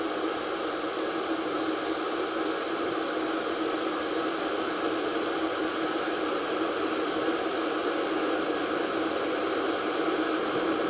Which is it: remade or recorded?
recorded